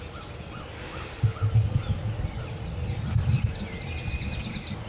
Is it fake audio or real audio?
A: real